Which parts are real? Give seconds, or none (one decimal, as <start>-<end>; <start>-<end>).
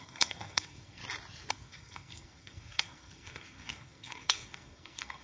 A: 1.0-1.5